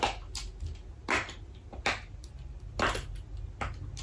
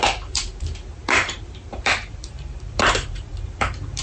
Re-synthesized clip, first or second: second